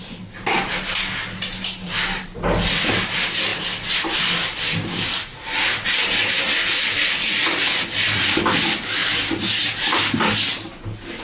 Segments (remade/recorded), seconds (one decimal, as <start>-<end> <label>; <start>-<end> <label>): 0.0-11.2 recorded